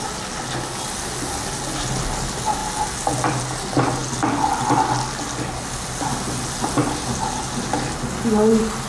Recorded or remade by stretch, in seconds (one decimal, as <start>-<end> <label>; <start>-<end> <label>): 0.0-8.9 recorded